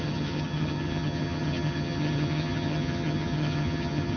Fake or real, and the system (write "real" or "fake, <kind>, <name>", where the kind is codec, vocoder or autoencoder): fake, vocoder, HiFi-GAN